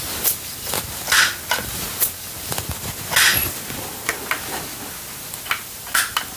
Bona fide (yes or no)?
yes